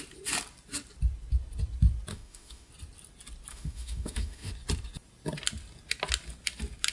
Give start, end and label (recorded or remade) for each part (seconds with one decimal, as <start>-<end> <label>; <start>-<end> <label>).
0.0-2.1 recorded; 2.1-2.7 remade; 2.7-3.5 recorded; 3.5-4.5 remade; 4.5-6.9 recorded